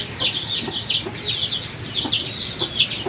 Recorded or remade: recorded